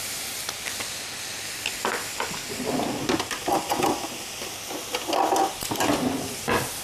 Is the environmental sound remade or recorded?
recorded